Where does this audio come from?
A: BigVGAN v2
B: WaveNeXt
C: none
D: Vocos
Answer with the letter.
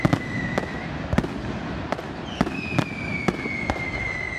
C